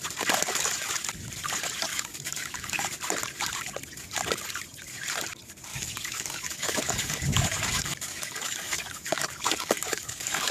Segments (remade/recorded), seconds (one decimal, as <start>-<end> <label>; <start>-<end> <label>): 0.0-1.9 recorded; 1.9-2.9 remade; 2.9-5.7 recorded; 5.7-10.5 remade